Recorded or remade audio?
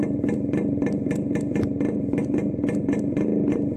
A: recorded